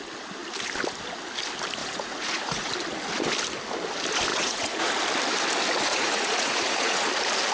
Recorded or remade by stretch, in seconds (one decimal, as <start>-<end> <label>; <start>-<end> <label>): 0.0-1.8 recorded; 1.8-2.7 remade; 2.7-4.3 recorded; 4.3-4.9 remade; 4.9-5.9 recorded; 5.9-7.1 remade; 7.1-7.5 recorded